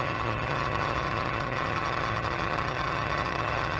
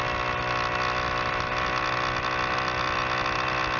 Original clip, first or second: second